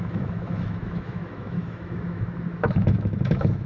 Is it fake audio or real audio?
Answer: fake